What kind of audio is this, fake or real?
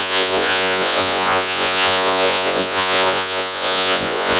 fake